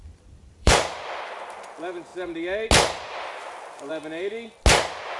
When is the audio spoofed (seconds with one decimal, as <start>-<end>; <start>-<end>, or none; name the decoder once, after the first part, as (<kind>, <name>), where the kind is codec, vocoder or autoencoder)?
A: 0.0-0.7 (vocoder, BigVGAN v2)